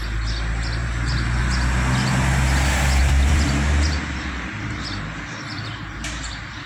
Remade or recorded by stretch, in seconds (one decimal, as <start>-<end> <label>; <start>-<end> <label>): 0.0-0.8 recorded; 0.8-1.4 remade; 1.4-3.0 recorded; 3.0-6.7 remade